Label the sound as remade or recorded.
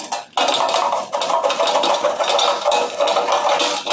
recorded